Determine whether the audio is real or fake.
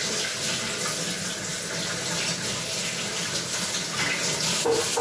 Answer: real